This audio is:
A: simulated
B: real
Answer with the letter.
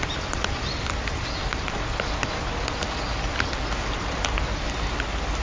B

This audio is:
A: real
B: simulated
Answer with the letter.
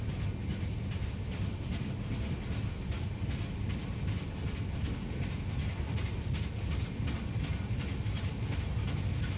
A